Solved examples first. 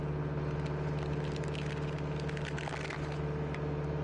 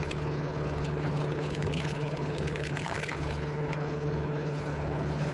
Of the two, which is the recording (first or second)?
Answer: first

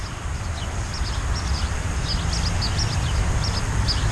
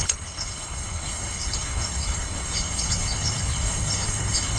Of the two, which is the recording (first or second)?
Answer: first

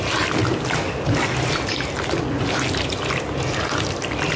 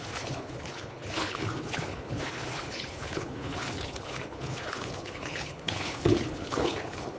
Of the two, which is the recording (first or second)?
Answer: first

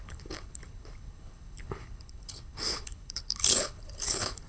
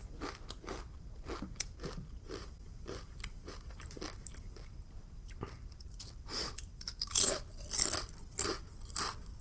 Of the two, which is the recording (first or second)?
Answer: second